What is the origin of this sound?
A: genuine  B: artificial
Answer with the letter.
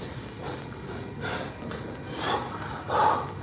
A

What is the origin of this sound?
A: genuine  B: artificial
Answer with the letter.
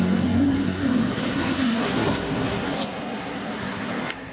B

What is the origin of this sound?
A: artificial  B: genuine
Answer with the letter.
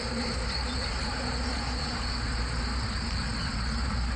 A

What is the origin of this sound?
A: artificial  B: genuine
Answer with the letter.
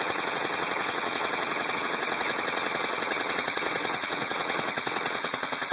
A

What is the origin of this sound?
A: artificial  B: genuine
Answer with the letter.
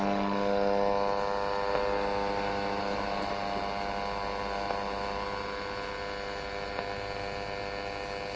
B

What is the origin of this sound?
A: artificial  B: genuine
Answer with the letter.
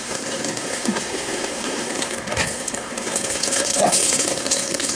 A